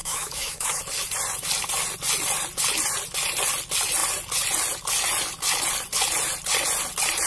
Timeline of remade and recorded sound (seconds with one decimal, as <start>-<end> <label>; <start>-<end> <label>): 0.0-0.8 remade; 0.8-7.3 recorded